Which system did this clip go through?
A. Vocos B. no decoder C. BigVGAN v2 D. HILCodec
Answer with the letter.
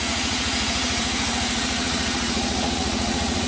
A